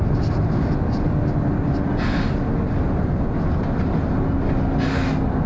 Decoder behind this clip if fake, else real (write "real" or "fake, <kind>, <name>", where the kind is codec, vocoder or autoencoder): real